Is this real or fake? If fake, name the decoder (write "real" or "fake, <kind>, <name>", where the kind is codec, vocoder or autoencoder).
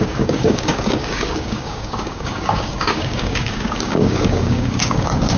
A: fake, codec, DAC